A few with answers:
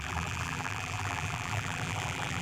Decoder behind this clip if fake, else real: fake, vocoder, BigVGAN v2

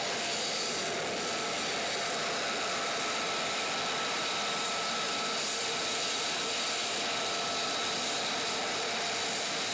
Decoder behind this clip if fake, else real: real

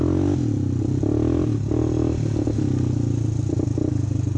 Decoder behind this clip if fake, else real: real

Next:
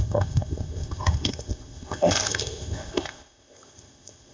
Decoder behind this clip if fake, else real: fake, codec, ZipCodec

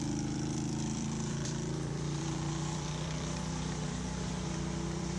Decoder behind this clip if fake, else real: fake, vocoder, BigVGAN v2